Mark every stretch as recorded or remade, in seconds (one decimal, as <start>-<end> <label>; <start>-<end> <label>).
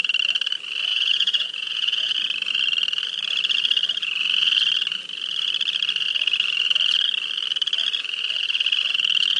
0.0-0.9 recorded; 0.9-2.1 remade; 2.1-9.4 recorded